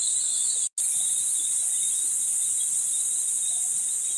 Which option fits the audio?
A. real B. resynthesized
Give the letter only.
A